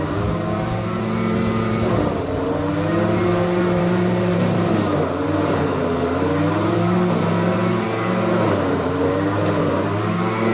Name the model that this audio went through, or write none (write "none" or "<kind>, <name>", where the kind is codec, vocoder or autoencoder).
vocoder, BigVGAN v2